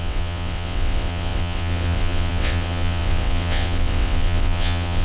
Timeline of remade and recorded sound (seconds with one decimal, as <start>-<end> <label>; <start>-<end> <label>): 0.0-5.0 remade